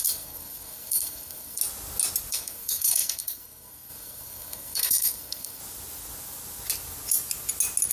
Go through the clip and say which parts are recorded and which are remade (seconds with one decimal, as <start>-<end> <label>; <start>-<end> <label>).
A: 0.0-1.6 remade; 1.6-2.3 recorded; 2.3-5.6 remade; 5.6-7.9 recorded